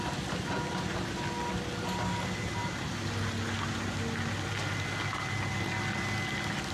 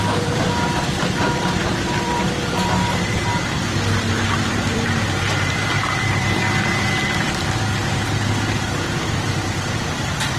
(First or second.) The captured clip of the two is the first